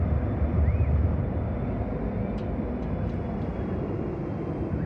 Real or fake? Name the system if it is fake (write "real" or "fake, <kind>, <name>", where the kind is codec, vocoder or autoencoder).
real